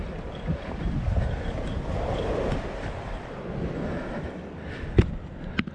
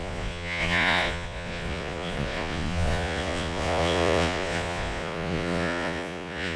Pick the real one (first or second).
first